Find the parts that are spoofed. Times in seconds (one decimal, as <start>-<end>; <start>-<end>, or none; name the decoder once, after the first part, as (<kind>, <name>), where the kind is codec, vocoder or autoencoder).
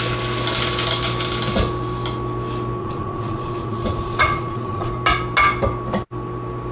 2.8-4.9 (vocoder, Vocos)